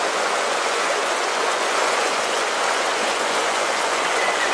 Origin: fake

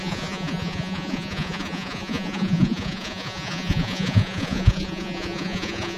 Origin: fake